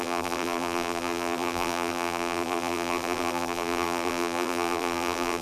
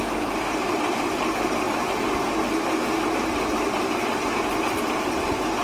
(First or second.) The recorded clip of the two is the second